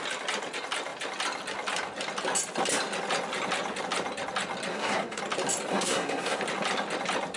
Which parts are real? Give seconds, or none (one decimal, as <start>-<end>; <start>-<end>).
0.0-4.7; 5.2-5.7; 6.4-7.4